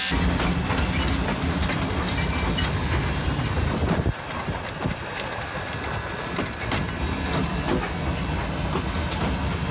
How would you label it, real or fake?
real